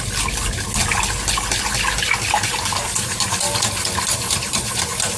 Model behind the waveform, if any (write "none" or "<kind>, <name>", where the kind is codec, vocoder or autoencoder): none